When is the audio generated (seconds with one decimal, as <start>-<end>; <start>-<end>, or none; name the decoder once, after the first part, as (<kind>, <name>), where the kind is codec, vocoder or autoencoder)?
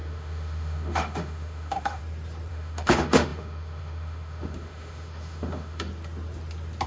0.0-2.0 (autoencoder, DAC-VAE); 2.5-5.9